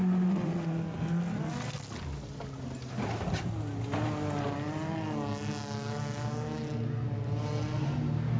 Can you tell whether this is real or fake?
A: real